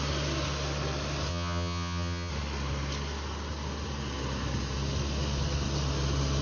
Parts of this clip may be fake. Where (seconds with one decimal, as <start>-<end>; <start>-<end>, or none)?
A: 1.3-2.3